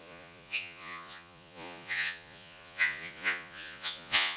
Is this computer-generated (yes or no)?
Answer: yes